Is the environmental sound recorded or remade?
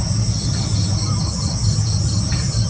recorded